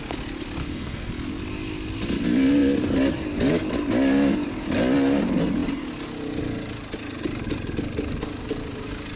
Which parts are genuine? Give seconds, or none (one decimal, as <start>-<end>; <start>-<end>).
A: 0.0-0.6; 1.1-9.2